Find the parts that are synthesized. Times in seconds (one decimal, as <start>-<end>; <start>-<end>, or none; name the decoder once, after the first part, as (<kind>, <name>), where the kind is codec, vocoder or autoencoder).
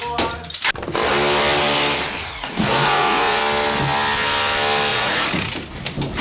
2.2-3.4 (vocoder, Vocos); 4.9-5.6